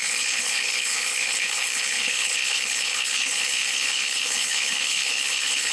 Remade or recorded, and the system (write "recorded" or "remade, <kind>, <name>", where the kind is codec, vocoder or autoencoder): remade, codec, HILCodec